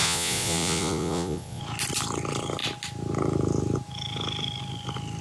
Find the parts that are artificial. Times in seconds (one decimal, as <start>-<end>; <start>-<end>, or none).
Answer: 0.0-1.6